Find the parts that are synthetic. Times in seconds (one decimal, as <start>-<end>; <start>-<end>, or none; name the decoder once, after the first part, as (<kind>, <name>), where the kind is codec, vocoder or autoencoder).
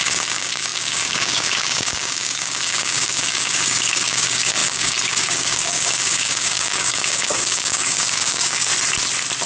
0.0-8.7 (codec, DAC)